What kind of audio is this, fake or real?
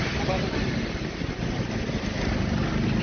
real